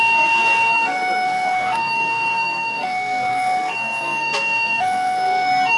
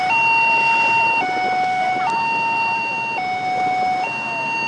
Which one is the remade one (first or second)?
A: first